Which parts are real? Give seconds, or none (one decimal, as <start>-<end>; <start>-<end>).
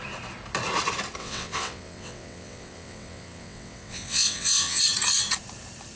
0.0-1.2; 4.8-6.0